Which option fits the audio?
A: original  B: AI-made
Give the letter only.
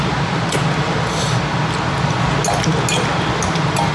A